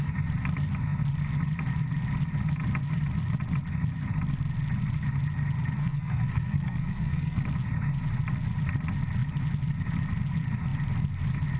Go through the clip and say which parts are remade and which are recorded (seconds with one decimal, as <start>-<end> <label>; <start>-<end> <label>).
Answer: 0.0-5.8 recorded; 5.8-7.4 remade; 7.4-11.6 recorded